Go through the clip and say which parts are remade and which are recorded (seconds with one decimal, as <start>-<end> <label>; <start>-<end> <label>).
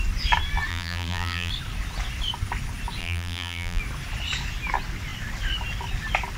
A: 0.0-0.7 recorded; 0.7-1.5 remade; 1.5-3.0 recorded; 3.0-3.8 remade; 3.8-6.4 recorded